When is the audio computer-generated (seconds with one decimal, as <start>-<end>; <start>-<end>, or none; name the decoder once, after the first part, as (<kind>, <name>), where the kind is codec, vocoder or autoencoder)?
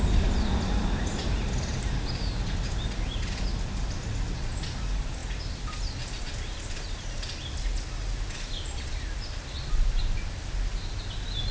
none